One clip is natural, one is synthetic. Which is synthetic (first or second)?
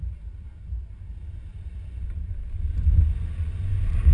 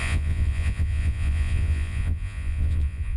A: second